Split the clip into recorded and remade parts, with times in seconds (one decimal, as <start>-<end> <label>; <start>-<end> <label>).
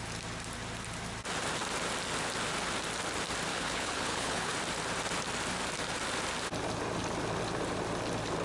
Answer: 0.0-3.5 recorded; 3.5-4.5 remade; 4.5-8.4 recorded